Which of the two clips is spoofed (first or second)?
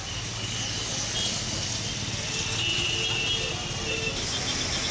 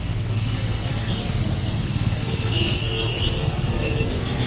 second